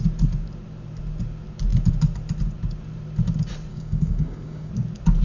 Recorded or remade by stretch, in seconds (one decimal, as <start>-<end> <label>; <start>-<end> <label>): 0.0-3.7 recorded; 3.7-4.7 remade; 4.7-5.2 recorded